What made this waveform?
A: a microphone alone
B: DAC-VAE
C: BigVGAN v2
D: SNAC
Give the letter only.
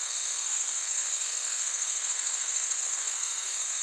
D